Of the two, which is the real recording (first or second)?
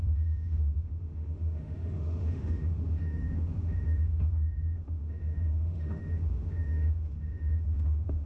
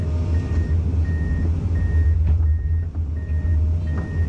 second